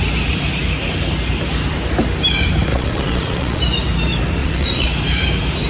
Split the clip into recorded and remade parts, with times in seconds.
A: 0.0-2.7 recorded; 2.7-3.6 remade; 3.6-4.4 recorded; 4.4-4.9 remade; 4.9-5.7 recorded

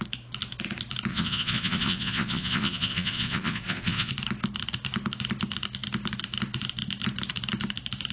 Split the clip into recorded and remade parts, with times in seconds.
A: 0.0-1.1 recorded; 1.1-4.1 remade; 4.1-8.1 recorded

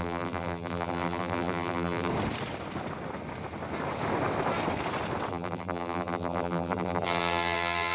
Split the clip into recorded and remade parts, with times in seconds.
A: 0.0-2.1 remade; 2.1-5.3 recorded; 5.3-7.9 remade